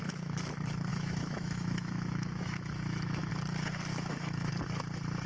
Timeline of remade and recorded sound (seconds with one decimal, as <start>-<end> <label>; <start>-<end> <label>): 0.0-0.9 recorded; 0.9-3.3 remade; 3.3-3.9 recorded; 3.9-4.5 remade; 4.5-5.3 recorded

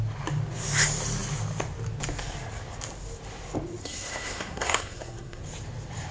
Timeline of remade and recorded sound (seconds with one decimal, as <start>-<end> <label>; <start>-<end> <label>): 0.0-3.8 recorded; 3.8-5.4 remade; 5.4-6.1 recorded

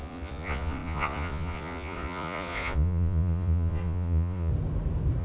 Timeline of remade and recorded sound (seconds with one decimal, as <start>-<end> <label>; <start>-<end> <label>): 0.0-4.5 remade; 4.5-5.2 recorded

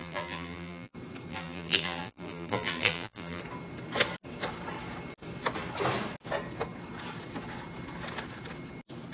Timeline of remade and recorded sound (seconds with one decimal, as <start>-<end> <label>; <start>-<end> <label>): 0.0-0.9 remade; 0.9-1.3 recorded; 1.3-3.4 remade; 3.4-9.1 recorded

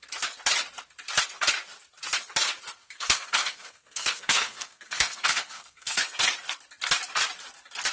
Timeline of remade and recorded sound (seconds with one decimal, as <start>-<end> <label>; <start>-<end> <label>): 0.0-2.8 recorded; 2.8-6.2 remade; 6.2-7.9 recorded

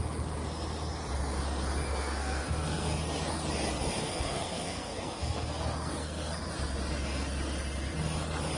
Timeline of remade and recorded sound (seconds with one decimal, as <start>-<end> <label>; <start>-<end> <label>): 0.0-1.8 recorded; 1.8-3.0 remade; 3.0-4.0 recorded; 4.0-6.4 remade; 6.4-8.6 recorded